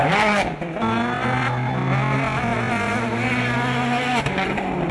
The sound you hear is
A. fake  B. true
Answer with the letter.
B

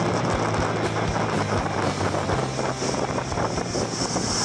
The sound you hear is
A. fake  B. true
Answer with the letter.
B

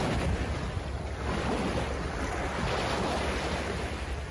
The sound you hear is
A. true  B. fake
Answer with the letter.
A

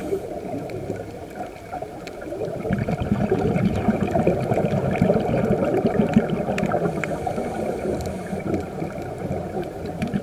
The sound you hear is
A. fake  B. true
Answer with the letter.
A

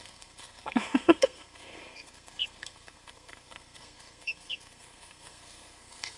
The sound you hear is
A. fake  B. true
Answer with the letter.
A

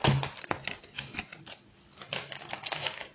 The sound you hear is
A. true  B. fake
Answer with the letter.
A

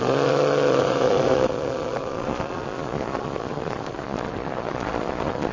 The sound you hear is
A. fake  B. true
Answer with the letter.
A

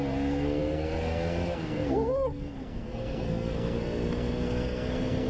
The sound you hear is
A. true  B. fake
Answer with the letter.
B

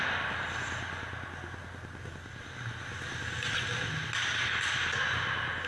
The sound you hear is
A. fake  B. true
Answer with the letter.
B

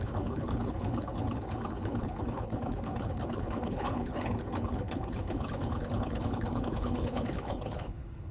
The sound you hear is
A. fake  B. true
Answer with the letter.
A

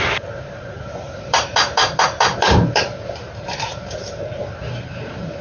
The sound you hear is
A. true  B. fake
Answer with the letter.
B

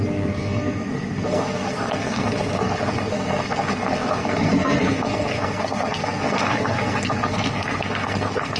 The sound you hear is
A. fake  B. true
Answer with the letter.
A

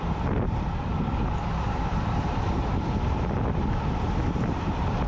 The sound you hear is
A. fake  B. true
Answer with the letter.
A